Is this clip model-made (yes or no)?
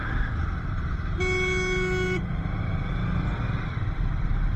no